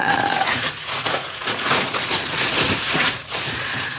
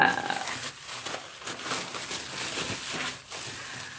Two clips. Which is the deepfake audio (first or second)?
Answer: first